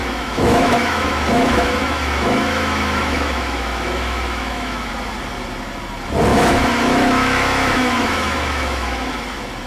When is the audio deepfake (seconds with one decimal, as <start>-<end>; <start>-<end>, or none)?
0.0-4.9; 6.3-9.1